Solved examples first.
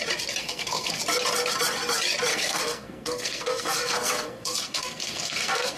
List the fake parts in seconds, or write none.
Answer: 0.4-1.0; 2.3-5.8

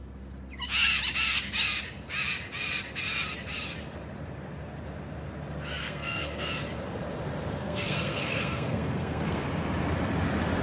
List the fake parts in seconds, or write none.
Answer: 5.8-6.5; 7.6-9.5

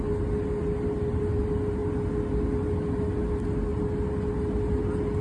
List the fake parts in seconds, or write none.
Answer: none

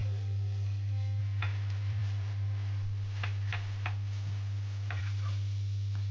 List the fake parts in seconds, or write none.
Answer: 0.0-1.2